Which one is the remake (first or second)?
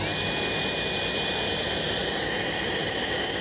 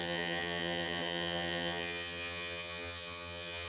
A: second